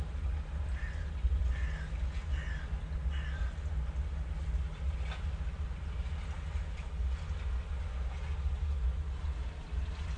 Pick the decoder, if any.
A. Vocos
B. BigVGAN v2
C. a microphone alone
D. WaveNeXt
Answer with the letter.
C